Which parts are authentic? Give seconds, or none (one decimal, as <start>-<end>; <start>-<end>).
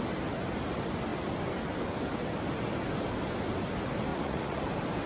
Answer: 0.0-4.1; 4.6-5.1